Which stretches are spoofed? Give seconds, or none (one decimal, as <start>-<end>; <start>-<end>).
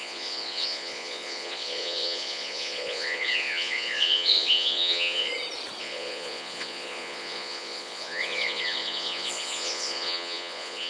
0.0-5.3; 5.8-10.9